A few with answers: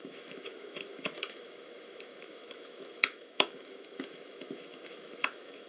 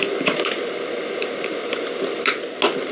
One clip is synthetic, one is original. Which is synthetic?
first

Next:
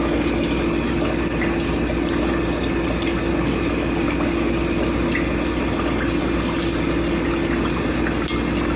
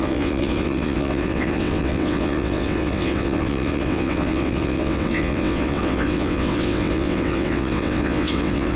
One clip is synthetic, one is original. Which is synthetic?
second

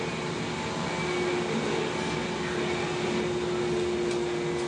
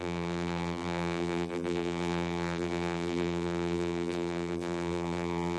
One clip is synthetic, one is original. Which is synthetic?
second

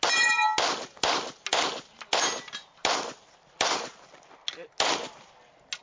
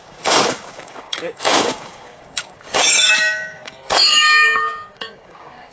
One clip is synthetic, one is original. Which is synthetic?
second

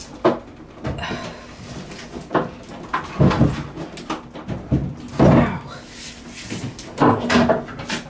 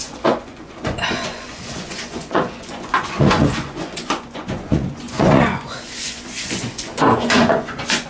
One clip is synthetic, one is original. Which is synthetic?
second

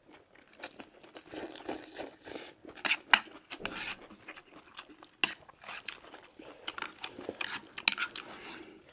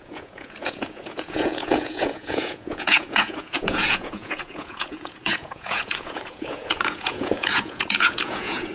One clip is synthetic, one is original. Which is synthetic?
second